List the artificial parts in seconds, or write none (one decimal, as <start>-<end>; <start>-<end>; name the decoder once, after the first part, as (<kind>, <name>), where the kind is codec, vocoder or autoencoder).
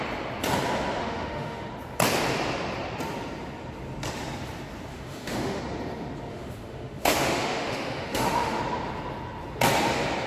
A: 1.0-1.7 (autoencoder, DAC-VAE); 4.9-5.6; 6.3-8.6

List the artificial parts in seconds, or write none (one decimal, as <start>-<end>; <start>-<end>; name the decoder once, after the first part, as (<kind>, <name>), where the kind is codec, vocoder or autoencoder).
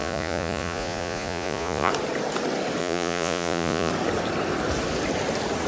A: 0.0-1.9 (vocoder, Vocos); 2.8-3.9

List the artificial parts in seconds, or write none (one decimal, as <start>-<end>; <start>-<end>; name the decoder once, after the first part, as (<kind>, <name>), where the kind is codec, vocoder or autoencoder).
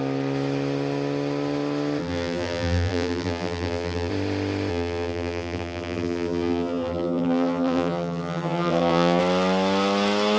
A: 2.0-4.1 (vocoder, BigVGAN v2); 4.7-9.2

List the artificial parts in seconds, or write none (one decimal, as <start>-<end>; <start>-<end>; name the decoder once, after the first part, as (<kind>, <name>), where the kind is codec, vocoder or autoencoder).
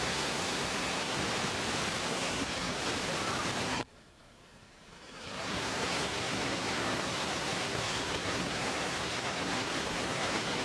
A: 0.0-1.2 (codec, SNAC); 2.0-2.8; 3.6-10.6